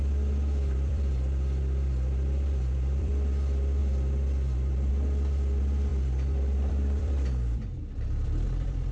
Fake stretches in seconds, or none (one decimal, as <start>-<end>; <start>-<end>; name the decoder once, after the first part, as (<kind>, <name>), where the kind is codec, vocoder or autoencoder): 0.0-3.8 (vocoder, BigVGAN v2); 4.9-8.9